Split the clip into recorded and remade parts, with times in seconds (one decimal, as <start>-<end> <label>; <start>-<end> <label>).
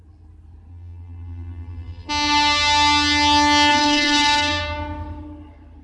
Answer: 0.0-0.7 recorded; 0.7-2.1 remade; 2.1-3.7 recorded; 3.7-4.6 remade; 4.6-5.8 recorded